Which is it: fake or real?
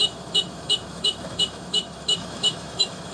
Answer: fake